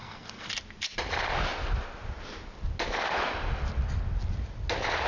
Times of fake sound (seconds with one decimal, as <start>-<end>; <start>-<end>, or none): 0.0-0.5